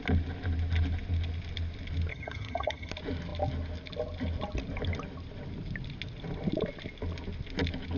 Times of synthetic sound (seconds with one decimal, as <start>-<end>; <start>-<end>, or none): 2.1-2.9